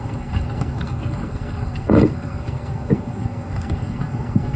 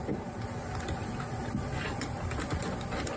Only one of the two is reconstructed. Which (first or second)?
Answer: first